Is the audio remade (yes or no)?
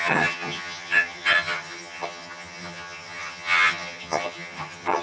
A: yes